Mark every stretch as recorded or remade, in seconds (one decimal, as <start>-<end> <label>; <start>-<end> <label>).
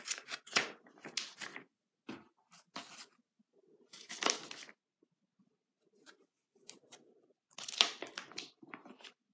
0.0-1.5 remade; 1.5-4.8 recorded; 4.8-9.3 remade